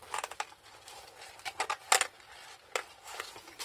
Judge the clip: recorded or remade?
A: recorded